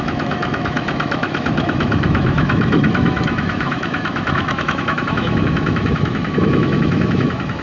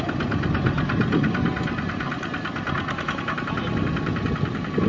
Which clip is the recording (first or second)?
second